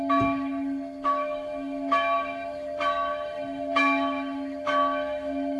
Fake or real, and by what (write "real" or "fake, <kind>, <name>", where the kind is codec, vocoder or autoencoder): fake, autoencoder, DAC-VAE